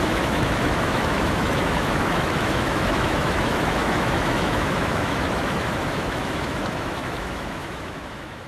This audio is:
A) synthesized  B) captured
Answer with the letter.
A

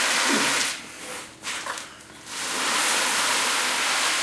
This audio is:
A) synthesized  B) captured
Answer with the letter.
B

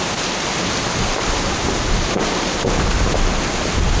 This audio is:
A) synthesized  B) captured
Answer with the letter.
B